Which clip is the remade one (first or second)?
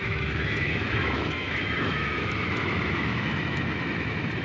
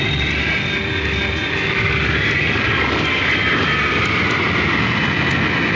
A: first